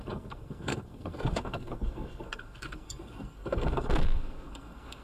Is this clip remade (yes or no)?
yes